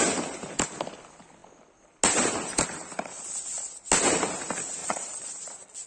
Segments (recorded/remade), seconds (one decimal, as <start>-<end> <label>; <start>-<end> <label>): 0.0-4.8 recorded; 4.8-5.3 remade; 5.3-5.9 recorded